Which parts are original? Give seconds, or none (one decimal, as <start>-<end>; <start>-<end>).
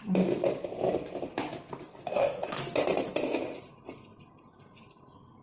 0.0-1.9; 2.6-5.4